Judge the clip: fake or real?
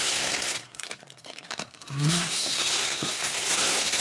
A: fake